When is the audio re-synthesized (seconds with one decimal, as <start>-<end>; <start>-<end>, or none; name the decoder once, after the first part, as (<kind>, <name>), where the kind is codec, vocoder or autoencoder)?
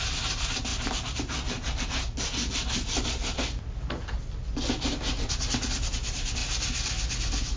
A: none